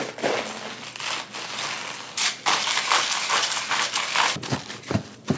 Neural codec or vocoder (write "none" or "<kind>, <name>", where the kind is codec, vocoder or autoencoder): none